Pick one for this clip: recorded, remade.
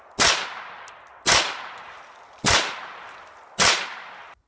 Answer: recorded